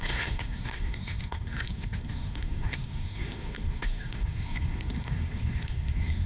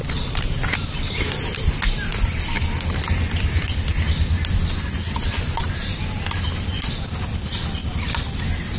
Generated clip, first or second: first